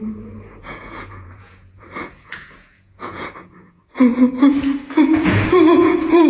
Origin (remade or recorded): remade